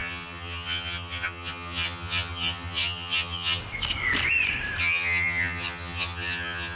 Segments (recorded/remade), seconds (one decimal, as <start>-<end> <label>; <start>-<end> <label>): 0.0-3.6 remade; 3.6-4.8 recorded; 4.8-6.8 remade